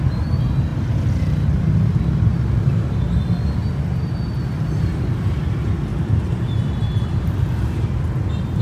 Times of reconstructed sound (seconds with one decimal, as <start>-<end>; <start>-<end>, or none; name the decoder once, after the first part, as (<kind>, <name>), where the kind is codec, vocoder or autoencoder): 5.9-7.7 (vocoder, BigVGAN v2)